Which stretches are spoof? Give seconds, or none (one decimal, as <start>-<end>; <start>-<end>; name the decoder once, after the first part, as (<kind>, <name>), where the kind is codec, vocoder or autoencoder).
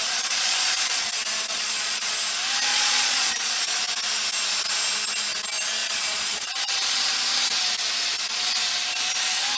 0.0-1.1 (vocoder, Vocos); 1.5-2.1; 2.7-3.8; 5.8-7.1